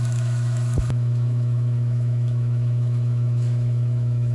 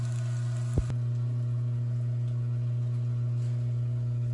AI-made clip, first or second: first